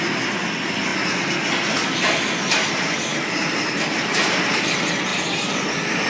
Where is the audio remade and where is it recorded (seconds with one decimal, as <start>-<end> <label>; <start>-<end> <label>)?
0.0-3.1 recorded; 3.1-3.7 remade; 3.7-5.1 recorded; 5.1-6.1 remade